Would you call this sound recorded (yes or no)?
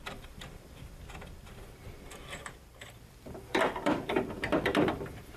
no